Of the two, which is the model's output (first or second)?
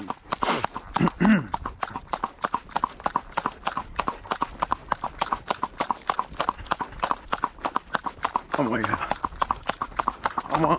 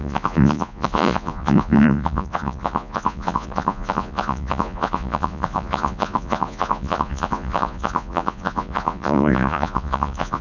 second